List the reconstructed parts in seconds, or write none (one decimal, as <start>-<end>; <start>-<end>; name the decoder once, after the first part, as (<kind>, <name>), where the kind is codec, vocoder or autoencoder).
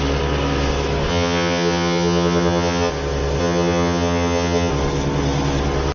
1.1-2.9 (vocoder, HiFi-GAN); 3.4-4.7